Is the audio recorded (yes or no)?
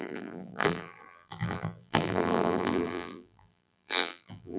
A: no